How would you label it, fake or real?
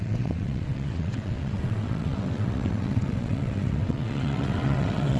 fake